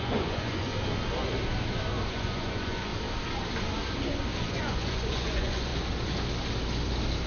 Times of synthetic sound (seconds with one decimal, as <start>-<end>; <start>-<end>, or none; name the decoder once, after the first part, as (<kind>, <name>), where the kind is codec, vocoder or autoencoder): 0.0-0.7 (vocoder, Vocos); 2.1-2.9; 4.4-5.7